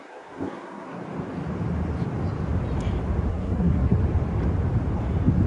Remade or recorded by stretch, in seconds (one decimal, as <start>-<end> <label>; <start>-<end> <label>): 0.0-1.0 remade; 1.0-3.3 recorded; 3.3-4.0 remade; 4.0-5.5 recorded

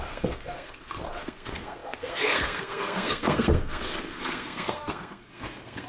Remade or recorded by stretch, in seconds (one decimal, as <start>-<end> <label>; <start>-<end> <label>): 0.0-5.9 remade

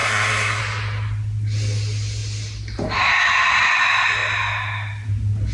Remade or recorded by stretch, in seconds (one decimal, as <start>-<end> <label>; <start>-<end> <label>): 0.0-0.6 remade; 0.6-5.5 recorded